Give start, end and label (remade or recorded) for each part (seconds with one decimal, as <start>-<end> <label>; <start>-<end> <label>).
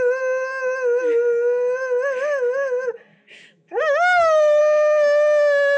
0.0-3.1 recorded; 3.1-4.6 remade; 4.6-5.8 recorded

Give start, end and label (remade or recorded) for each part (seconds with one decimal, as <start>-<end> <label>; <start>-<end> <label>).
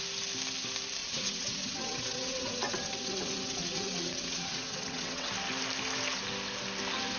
0.0-1.0 recorded; 1.0-5.3 remade; 5.3-7.2 recorded